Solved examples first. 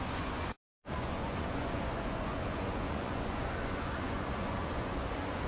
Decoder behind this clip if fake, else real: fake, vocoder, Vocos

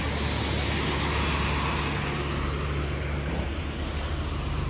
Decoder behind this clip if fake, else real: real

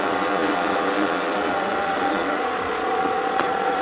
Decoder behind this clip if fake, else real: fake, vocoder, Vocos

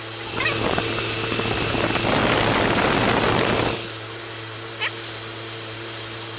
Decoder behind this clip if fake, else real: real